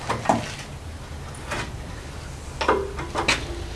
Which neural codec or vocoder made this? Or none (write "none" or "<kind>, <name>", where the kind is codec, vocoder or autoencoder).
none